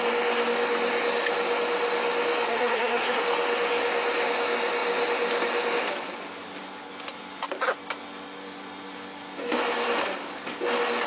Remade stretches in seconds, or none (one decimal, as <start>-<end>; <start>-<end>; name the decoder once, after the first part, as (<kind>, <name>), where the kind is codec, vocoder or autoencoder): 2.5-3.2 (codec, SNAC)